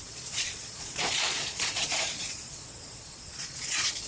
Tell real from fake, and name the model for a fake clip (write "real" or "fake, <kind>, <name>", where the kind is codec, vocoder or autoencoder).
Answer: fake, vocoder, Vocos